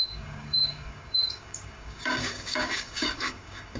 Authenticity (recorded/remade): remade